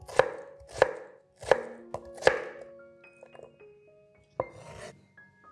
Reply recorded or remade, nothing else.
recorded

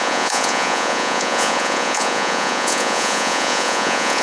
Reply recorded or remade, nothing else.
remade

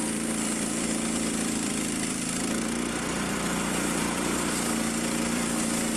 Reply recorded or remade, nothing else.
remade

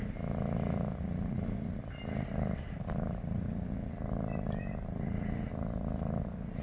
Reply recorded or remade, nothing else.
recorded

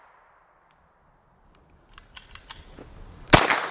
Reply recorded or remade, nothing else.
recorded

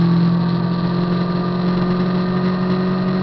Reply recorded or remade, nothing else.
recorded